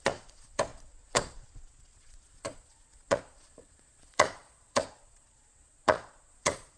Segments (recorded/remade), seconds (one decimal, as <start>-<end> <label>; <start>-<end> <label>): 0.0-6.8 remade

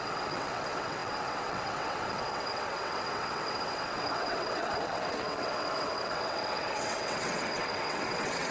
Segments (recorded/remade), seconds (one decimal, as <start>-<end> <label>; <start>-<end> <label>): 0.0-8.5 remade

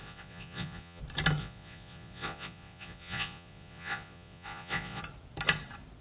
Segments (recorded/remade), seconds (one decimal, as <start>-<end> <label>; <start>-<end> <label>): 0.0-1.0 remade; 1.0-1.4 recorded; 1.4-5.0 remade; 5.0-6.0 recorded

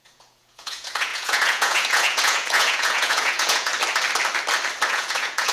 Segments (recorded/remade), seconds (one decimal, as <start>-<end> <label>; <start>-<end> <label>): 0.0-3.7 remade; 3.7-4.9 recorded; 4.9-5.5 remade

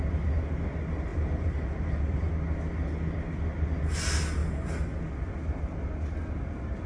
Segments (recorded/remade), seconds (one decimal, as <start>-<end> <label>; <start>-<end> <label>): 0.0-1.1 recorded; 1.1-2.3 remade; 2.3-6.9 recorded

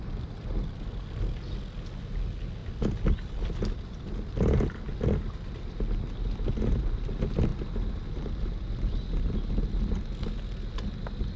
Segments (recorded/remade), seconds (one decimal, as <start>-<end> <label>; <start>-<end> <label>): 0.0-11.4 recorded